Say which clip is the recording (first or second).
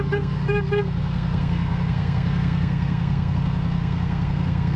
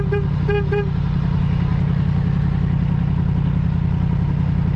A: second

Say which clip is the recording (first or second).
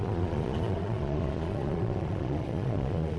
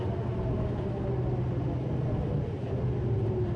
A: second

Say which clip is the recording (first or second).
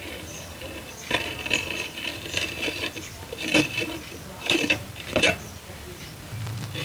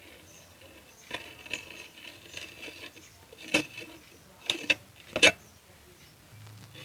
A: second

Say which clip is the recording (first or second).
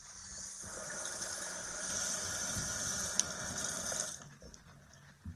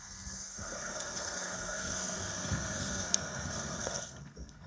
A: first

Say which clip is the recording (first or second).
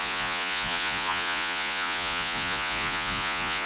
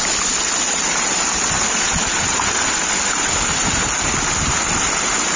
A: second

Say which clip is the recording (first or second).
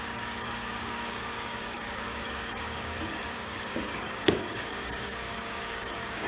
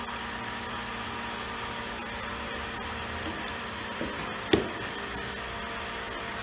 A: second